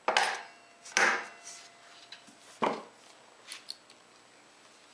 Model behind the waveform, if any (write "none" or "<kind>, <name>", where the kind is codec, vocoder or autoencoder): none